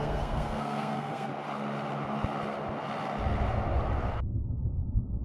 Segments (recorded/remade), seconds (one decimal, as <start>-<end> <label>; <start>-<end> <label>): 0.0-1.3 remade; 1.3-4.1 recorded; 4.1-5.2 remade